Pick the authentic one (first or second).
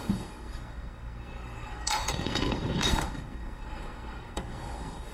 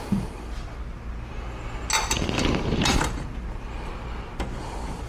second